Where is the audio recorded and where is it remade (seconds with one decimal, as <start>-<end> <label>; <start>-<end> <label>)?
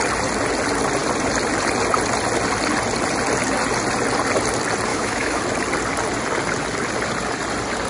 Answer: 0.0-4.9 recorded; 4.9-5.4 remade; 5.4-7.9 recorded